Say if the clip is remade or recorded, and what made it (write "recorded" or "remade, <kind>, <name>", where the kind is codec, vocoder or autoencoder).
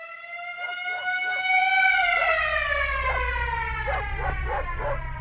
remade, vocoder, BigVGAN v2